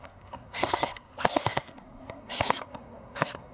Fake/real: fake